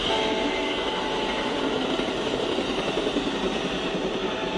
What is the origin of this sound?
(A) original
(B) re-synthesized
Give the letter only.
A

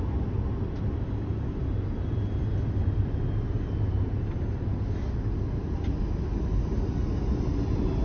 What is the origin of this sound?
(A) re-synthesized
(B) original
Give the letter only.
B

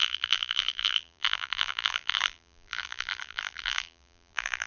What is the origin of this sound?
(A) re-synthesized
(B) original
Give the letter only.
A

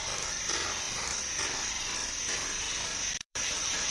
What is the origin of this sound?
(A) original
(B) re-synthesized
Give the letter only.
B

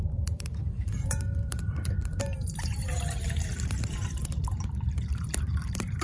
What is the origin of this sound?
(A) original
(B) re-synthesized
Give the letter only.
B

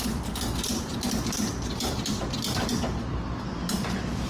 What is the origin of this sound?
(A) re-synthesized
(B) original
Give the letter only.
B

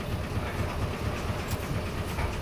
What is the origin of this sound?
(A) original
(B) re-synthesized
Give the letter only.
A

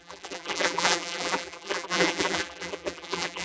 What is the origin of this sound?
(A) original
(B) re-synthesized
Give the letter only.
B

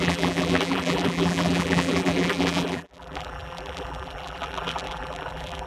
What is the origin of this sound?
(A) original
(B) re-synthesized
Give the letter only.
B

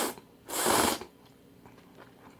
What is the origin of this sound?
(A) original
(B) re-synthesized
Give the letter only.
B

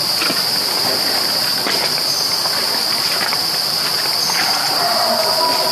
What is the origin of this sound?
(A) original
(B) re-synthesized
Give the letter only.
A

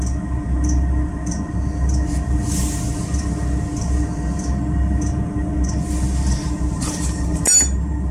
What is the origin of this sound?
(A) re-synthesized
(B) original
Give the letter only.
B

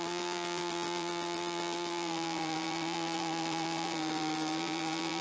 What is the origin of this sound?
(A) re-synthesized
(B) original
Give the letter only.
A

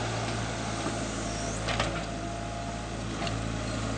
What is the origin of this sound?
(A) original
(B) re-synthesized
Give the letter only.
A